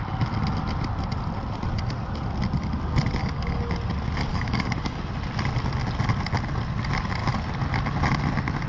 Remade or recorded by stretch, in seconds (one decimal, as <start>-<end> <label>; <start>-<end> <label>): 0.0-3.2 recorded; 3.2-3.7 remade; 3.7-4.3 recorded; 4.3-5.0 remade; 5.0-8.7 recorded